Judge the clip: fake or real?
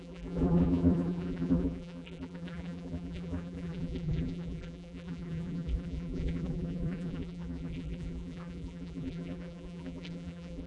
fake